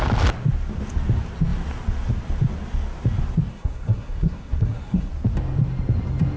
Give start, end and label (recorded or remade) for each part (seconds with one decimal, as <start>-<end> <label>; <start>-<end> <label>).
0.0-3.5 recorded; 3.5-5.1 remade; 5.1-6.4 recorded